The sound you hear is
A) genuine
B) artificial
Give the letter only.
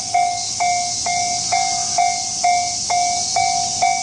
A